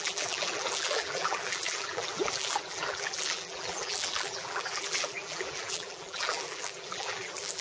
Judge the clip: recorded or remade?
remade